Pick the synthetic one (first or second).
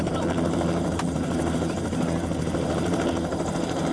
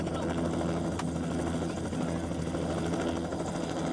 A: first